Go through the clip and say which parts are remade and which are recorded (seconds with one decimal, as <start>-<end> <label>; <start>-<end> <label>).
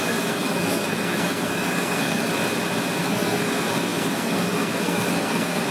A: 0.0-2.3 remade; 2.3-3.0 recorded; 3.0-5.7 remade